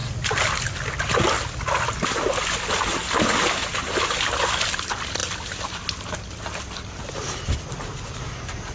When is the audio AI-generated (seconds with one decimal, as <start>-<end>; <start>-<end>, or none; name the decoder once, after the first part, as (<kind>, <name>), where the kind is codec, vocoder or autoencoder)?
none